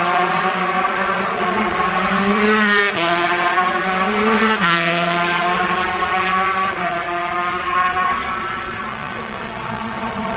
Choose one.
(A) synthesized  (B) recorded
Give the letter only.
A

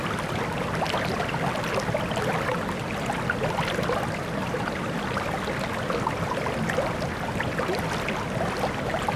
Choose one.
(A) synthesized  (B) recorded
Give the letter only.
B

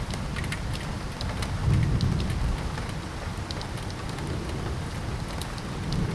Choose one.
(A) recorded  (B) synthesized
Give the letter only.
A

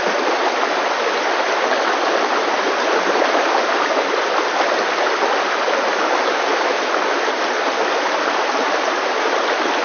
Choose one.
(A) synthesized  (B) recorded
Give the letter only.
B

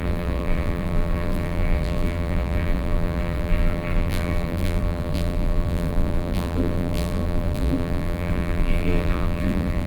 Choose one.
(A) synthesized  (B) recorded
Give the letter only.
A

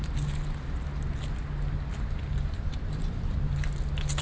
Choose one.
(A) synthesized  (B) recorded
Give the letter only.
B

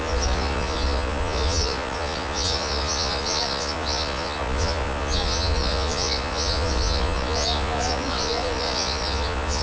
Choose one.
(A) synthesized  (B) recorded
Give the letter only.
A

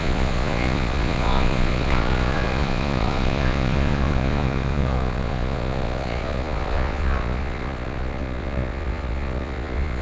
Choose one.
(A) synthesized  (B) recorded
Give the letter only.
A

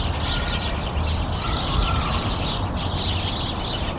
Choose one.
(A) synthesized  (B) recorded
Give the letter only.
B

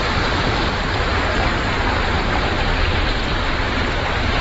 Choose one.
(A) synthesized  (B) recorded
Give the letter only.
A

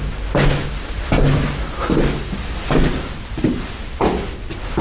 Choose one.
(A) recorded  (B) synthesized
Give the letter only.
A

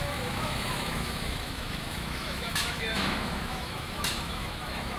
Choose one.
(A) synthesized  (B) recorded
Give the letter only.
A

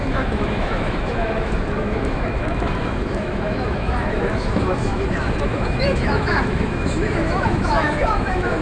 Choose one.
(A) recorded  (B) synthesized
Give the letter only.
B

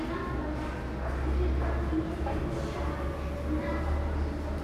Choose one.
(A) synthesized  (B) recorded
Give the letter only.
B